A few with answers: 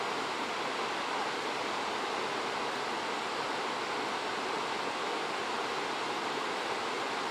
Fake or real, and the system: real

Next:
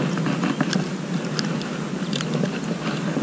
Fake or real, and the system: real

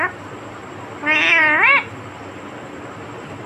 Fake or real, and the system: real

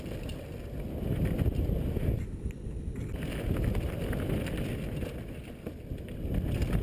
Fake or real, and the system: real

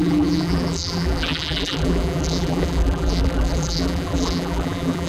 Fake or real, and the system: fake, vocoder, BigVGAN v2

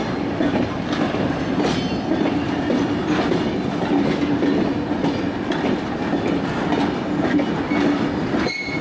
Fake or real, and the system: real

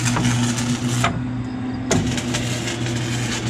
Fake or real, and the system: real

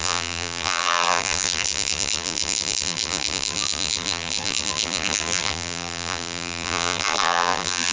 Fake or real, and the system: fake, vocoder, BigVGAN v2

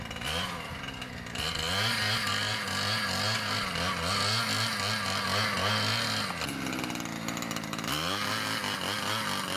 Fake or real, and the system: real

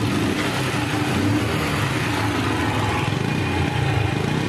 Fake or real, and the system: real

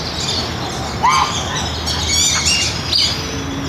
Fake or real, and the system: real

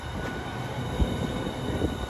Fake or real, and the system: real